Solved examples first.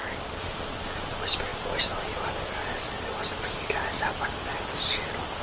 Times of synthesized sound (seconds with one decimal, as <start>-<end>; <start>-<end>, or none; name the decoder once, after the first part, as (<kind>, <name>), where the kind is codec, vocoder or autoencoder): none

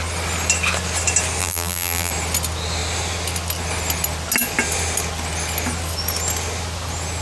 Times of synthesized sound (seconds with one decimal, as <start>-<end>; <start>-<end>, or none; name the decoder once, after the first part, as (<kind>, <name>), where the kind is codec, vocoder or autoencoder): 1.4-2.1 (vocoder, BigVGAN v2)

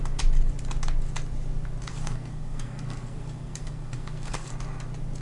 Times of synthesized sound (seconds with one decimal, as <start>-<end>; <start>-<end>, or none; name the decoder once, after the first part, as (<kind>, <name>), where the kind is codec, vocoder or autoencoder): 1.9-4.5 (codec, SNAC)